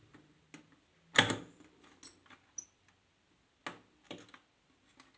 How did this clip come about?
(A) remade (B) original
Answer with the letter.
B